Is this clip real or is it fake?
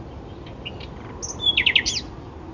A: real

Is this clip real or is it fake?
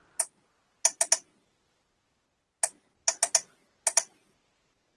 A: real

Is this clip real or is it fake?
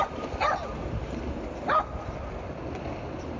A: real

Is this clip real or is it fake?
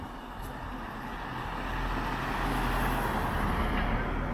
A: real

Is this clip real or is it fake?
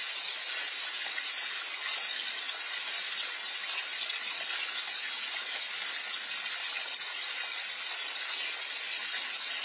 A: real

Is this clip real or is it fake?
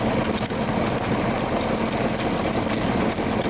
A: real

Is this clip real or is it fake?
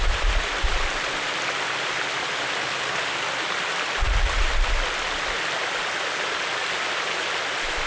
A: real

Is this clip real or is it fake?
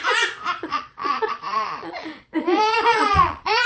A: fake